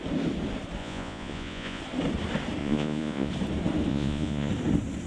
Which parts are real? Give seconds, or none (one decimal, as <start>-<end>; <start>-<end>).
0.0-0.8; 1.8-2.6; 3.3-3.9; 4.5-5.1